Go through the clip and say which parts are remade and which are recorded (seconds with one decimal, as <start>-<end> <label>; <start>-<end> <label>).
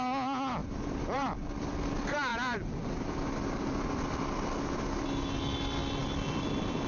0.0-0.6 recorded; 0.6-1.5 remade; 1.5-6.9 recorded